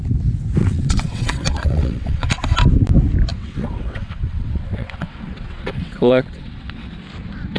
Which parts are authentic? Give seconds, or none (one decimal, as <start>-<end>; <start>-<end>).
0.0-0.6; 2.3-3.3; 6.9-7.6